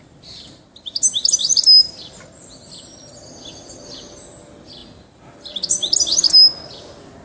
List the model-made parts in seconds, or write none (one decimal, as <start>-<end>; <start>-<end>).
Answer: none